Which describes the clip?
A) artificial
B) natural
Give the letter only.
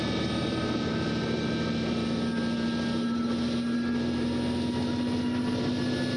B